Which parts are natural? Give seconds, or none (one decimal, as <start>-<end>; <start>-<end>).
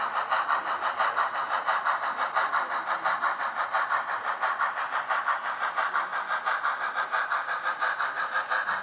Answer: 0.0-8.8